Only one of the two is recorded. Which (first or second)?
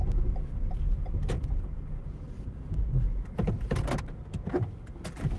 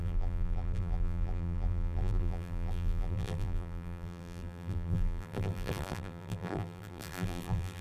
first